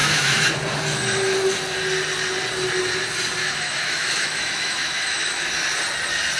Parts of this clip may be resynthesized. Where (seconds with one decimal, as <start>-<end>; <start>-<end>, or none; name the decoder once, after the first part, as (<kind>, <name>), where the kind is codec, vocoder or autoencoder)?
0.0-0.5 (autoencoder, DAC-VAE); 3.4-5.5